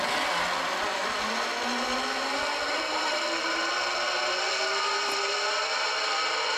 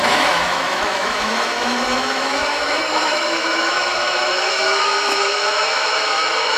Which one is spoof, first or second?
second